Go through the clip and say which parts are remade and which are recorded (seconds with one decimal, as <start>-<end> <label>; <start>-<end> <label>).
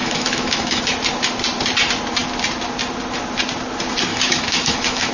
0.0-0.8 remade; 0.8-4.1 recorded; 4.1-5.1 remade